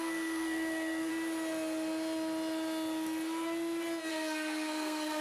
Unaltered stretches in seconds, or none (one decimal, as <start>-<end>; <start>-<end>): 1.1-4.1